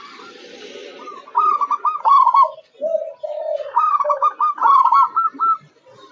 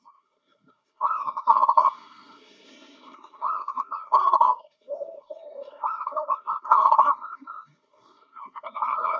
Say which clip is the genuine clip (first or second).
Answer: first